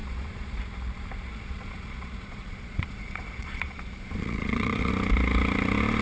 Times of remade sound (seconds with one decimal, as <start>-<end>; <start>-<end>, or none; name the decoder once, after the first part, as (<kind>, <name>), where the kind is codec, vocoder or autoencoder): 0.0-0.6 (vocoder, Vocos); 1.3-4.9